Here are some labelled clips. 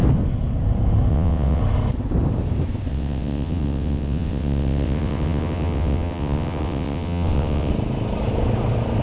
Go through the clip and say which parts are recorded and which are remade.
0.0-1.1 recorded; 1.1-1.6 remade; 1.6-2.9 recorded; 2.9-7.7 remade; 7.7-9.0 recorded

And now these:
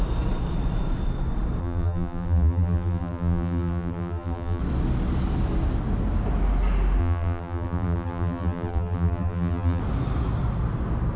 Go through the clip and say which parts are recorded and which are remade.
0.0-1.6 recorded; 1.6-4.6 remade; 4.6-7.0 recorded; 7.0-9.8 remade; 9.8-11.2 recorded

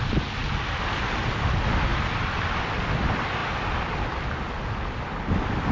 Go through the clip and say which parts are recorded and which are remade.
0.0-0.4 recorded; 0.4-0.9 remade; 0.9-5.7 recorded